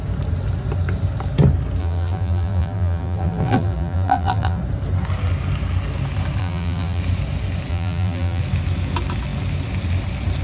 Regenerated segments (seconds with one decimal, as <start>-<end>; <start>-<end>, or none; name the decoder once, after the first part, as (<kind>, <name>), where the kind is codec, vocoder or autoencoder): 1.8-4.6 (vocoder, BigVGAN v2); 6.4-7.0; 7.7-8.4